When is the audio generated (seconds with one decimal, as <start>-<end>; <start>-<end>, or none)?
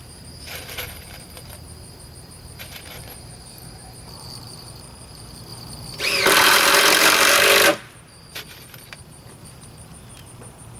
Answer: 0.0-5.5; 6.0-10.8